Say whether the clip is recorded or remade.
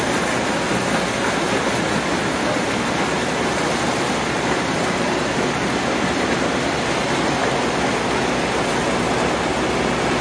recorded